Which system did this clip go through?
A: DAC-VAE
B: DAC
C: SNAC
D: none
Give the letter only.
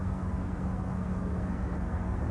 C